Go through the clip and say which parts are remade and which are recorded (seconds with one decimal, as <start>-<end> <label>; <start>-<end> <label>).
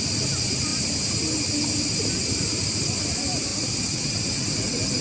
0.0-3.5 recorded; 3.5-5.0 remade